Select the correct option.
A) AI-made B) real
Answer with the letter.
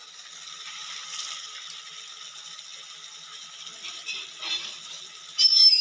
B